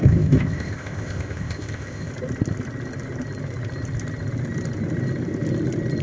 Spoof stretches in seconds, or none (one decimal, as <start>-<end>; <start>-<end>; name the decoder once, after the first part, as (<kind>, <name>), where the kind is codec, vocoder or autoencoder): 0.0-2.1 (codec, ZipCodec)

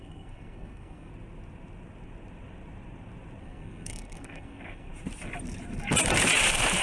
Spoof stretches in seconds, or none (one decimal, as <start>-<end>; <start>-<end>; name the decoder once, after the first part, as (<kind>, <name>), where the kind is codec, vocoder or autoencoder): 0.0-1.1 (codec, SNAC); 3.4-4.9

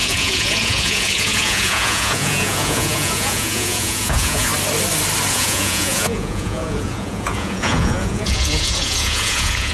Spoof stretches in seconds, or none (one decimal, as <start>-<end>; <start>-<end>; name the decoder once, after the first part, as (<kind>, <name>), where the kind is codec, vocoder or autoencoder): 0.0-4.5 (vocoder, Vocos); 5.3-9.7